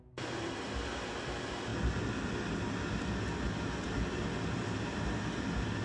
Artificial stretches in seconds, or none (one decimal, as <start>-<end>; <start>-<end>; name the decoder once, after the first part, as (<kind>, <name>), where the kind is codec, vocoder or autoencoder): none